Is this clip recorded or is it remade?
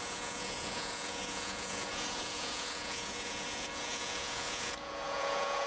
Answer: remade